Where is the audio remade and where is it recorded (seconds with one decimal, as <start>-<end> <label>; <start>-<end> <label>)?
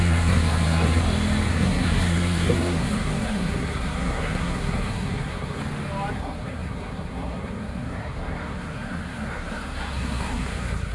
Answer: 0.0-1.0 remade; 1.0-1.5 recorded; 1.5-5.6 remade; 5.6-6.1 recorded; 6.1-10.9 remade